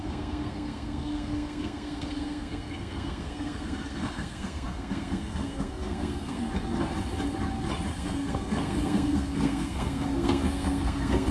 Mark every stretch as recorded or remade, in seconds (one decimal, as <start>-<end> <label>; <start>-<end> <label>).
0.0-6.4 remade; 6.4-7.9 recorded; 7.9-11.3 remade